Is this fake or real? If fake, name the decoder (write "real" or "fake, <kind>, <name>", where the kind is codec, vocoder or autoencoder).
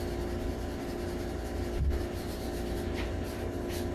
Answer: real